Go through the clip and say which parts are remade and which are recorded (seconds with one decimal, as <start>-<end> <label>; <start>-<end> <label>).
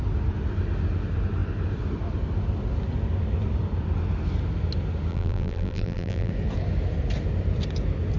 0.0-5.1 recorded; 5.1-6.3 remade; 6.3-8.2 recorded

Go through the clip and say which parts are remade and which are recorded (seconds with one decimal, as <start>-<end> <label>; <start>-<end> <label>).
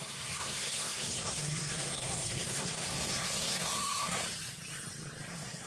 0.0-4.2 remade; 4.2-5.3 recorded; 5.3-5.7 remade